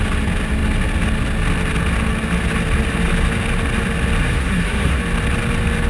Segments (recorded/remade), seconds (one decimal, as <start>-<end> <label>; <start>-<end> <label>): 0.0-4.2 recorded; 4.2-5.0 remade; 5.0-5.9 recorded